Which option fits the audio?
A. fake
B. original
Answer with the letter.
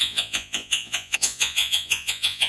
A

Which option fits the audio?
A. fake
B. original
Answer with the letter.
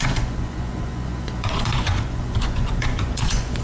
A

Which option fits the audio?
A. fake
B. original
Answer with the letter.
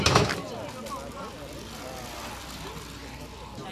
B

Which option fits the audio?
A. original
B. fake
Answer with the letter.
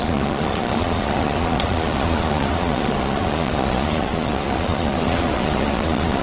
B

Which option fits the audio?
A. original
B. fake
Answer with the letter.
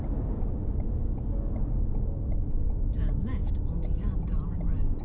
A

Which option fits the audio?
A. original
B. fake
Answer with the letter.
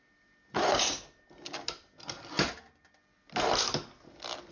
A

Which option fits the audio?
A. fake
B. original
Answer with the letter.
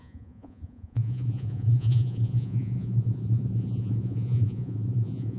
A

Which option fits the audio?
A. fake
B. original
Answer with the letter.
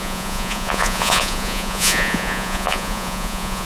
A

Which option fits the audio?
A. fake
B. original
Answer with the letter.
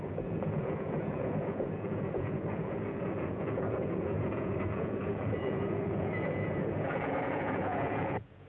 A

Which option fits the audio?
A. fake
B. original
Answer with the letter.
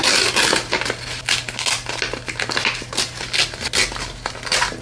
B